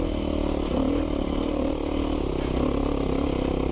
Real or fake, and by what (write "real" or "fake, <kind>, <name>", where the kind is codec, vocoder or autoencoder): real